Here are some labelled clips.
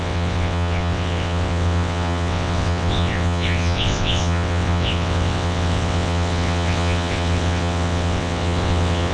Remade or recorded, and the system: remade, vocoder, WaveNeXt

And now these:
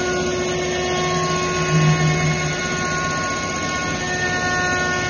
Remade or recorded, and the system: recorded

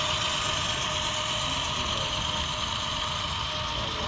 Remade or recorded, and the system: recorded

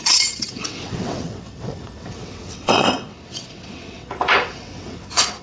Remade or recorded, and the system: remade, vocoder, WaveNeXt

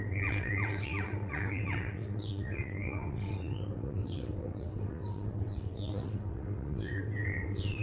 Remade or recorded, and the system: remade, vocoder, WaveNeXt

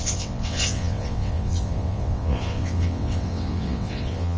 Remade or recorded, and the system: remade, vocoder, WaveNeXt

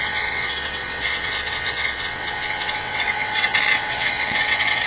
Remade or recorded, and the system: remade, vocoder, WaveNeXt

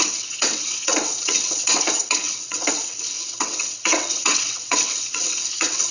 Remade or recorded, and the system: remade, vocoder, WaveNeXt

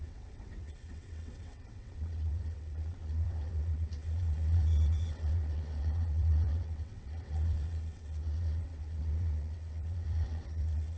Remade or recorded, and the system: remade, vocoder, WaveNeXt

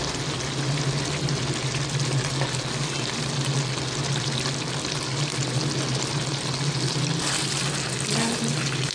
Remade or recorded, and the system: recorded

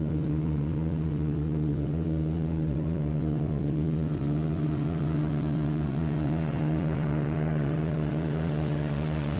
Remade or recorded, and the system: remade, vocoder, WaveNeXt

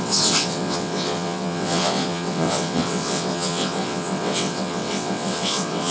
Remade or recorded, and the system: remade, vocoder, WaveNeXt